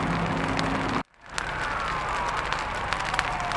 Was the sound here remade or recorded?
recorded